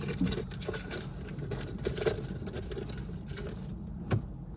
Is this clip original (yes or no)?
yes